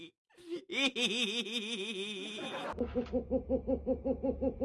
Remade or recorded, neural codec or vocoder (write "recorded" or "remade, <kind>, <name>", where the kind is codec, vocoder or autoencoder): recorded